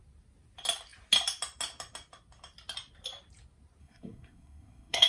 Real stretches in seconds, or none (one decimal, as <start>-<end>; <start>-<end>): 0.0-3.8